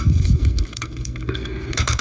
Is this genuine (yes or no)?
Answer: no